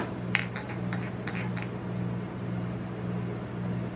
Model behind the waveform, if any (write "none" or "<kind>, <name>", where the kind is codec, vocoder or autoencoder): none